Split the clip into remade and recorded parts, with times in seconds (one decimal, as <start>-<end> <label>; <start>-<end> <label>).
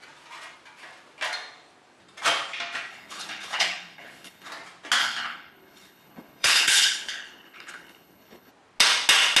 0.0-2.9 recorded; 2.9-4.5 remade; 4.5-5.0 recorded; 5.0-8.5 remade; 8.5-9.4 recorded